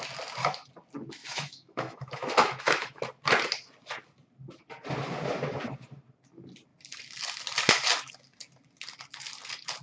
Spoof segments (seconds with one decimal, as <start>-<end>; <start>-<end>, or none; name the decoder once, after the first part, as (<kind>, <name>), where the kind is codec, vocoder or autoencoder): 1.2-3.0 (autoencoder, DAC-VAE)